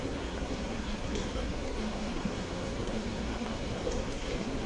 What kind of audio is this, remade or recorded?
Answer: remade